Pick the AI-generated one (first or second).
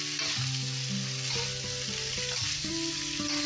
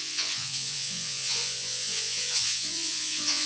second